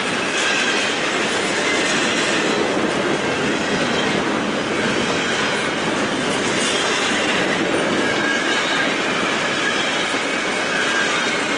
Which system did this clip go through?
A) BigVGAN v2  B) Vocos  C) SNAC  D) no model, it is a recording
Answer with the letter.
D